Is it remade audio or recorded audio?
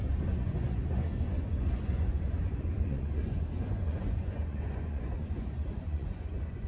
remade